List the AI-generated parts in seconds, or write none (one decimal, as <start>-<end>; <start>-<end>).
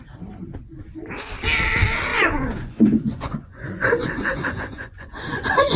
0.7-1.3; 2.1-5.8